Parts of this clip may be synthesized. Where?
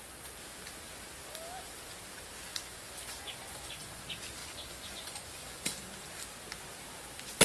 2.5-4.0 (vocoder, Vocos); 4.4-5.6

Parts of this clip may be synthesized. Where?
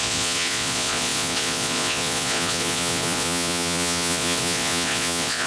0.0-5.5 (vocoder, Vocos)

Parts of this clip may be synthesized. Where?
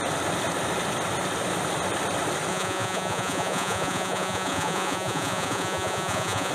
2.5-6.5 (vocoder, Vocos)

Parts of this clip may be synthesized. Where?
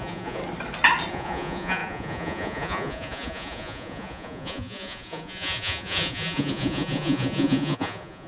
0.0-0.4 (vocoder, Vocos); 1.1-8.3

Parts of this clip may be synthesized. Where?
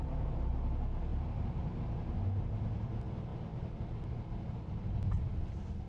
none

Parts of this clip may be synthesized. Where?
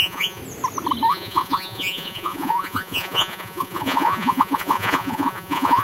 0.0-0.4 (vocoder, Vocos); 1.1-5.8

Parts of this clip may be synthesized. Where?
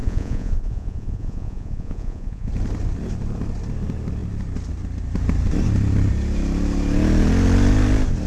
0.0-2.5 (vocoder, Vocos)